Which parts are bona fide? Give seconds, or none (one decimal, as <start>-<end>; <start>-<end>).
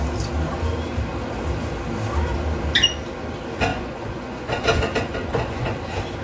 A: 0.0-3.7; 5.7-6.2